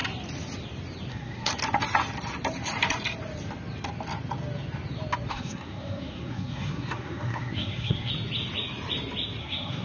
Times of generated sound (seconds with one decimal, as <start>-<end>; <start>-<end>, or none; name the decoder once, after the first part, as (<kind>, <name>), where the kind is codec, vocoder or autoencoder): 1.1-1.5 (codec, SNAC); 5.3-8.1; 9.4-9.8